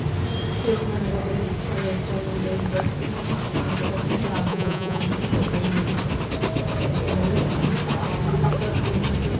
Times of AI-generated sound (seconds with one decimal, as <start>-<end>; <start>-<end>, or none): 4.5-5.0